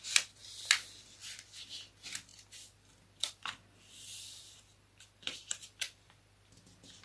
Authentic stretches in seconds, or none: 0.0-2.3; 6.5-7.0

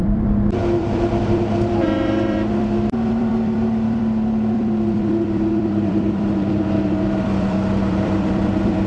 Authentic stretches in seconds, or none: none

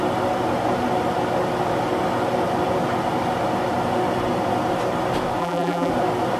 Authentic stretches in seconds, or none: 0.0-5.4; 5.9-6.4